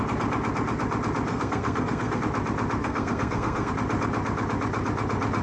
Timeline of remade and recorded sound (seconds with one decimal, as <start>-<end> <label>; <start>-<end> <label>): 0.0-1.3 recorded; 1.3-2.2 remade; 2.2-2.8 recorded; 2.8-3.7 remade; 3.7-5.4 recorded